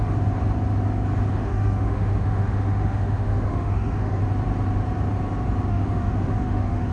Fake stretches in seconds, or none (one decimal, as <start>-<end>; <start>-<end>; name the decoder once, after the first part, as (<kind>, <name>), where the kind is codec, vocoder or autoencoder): 1.3-4.2 (autoencoder, DAC-VAE); 5.7-6.9